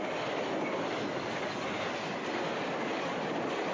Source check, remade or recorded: recorded